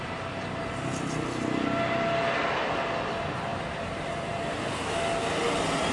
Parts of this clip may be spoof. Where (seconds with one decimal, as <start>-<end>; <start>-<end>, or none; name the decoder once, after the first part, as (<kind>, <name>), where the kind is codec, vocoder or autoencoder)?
3.5-4.4 (vocoder, BigVGAN v2)